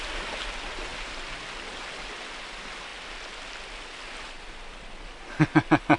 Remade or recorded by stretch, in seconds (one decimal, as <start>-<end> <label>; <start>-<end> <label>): 0.0-6.0 recorded